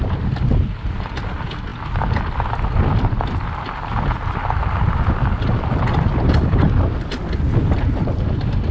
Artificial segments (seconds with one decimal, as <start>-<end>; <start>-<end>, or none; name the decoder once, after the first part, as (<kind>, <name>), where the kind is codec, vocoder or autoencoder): none